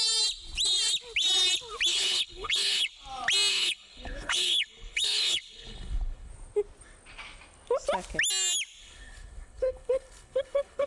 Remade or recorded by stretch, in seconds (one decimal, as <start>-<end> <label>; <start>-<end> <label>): 0.0-1.9 recorded; 1.9-2.9 remade; 2.9-3.5 recorded; 3.5-6.3 remade; 6.3-8.8 recorded; 8.8-10.9 remade